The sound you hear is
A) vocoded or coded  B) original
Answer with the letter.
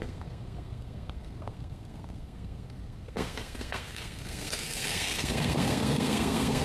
A